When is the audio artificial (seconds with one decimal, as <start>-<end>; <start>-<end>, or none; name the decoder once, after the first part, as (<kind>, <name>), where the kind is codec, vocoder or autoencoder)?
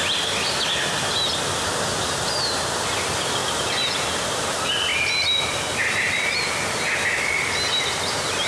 none